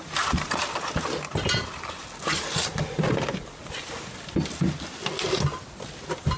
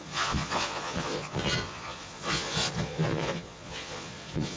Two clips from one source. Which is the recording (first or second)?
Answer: first